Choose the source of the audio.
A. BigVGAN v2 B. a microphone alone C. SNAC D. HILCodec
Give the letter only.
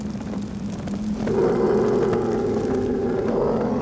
B